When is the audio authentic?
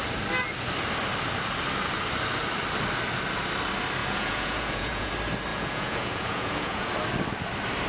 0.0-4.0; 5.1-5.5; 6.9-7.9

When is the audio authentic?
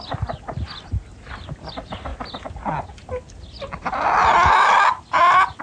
0.0-5.6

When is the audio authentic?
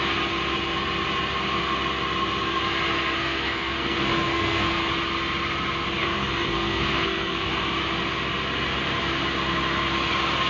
0.0-3.2; 4.8-6.0; 7.5-10.5